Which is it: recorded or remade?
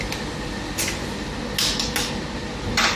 recorded